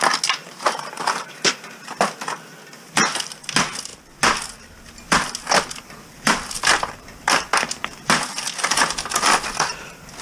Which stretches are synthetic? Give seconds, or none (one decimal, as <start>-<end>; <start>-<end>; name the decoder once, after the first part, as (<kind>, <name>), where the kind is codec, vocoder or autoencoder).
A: 0.4-1.6 (vocoder, BigVGAN v2)